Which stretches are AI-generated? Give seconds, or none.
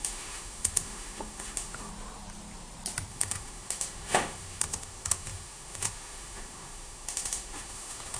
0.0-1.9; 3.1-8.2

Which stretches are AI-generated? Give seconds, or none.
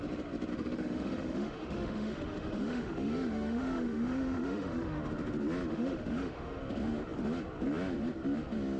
0.5-5.0; 5.7-6.6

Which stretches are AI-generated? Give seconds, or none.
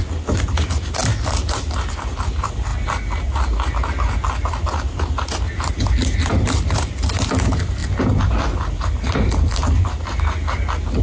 none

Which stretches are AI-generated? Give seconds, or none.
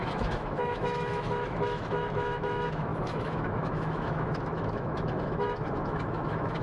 0.0-6.6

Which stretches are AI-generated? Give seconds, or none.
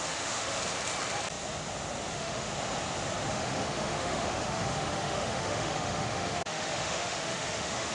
0.0-0.6; 2.1-2.5; 3.3-7.9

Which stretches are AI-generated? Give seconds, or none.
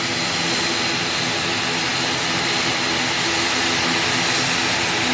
none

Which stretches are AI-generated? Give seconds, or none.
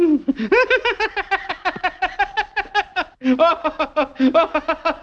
4.1-4.6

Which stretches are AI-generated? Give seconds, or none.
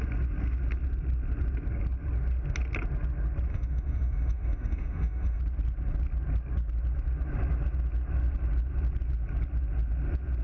3.5-5.4